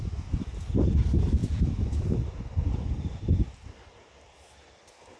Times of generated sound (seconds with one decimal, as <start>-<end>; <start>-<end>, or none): none